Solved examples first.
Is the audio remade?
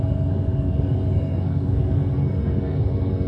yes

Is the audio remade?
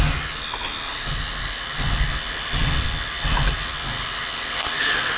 no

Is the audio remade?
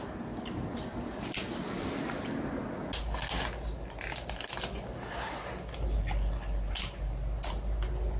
no